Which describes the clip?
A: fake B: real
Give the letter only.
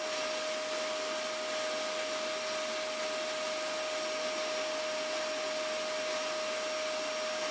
B